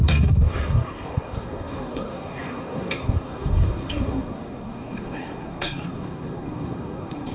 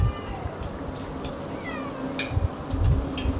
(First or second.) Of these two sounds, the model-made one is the first